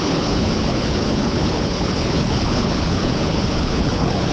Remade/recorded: remade